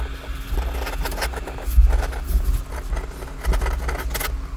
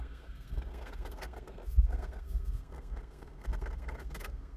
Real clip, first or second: first